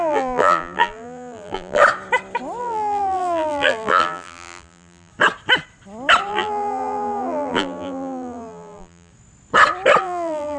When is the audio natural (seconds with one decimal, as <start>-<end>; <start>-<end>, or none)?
1.8-2.6; 5.1-6.3; 9.1-10.0